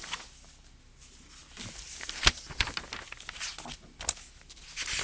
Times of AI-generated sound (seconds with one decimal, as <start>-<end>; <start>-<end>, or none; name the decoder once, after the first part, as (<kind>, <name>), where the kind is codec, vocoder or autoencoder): none